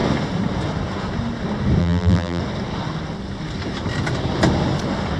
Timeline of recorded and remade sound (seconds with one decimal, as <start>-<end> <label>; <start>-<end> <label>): 0.0-1.8 recorded; 1.8-2.4 remade; 2.4-5.2 recorded